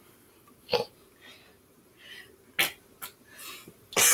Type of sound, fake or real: real